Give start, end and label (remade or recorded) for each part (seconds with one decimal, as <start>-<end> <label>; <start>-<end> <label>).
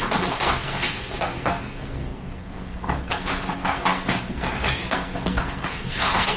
0.0-6.4 remade